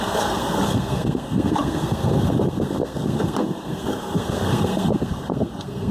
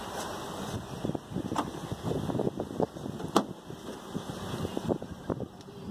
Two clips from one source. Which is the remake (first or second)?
first